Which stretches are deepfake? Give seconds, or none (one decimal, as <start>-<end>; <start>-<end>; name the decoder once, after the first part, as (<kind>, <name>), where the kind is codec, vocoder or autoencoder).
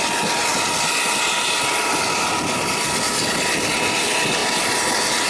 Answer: none